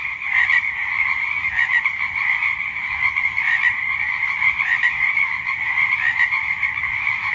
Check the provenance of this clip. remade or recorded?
remade